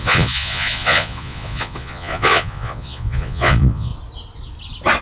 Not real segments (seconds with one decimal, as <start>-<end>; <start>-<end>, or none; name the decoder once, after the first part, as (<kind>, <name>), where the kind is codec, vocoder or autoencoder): 0.0-3.9 (vocoder, Vocos)